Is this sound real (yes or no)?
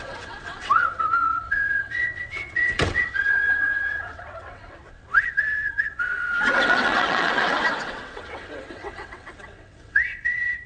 no